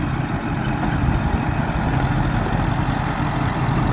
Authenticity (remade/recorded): recorded